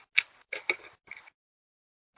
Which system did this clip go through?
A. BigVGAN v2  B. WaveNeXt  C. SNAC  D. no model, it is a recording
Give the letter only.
D